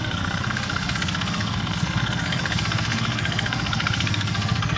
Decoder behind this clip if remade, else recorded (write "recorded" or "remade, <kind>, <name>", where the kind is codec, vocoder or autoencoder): remade, codec, SNAC